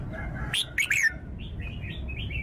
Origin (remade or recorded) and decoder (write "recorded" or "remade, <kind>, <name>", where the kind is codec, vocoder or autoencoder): recorded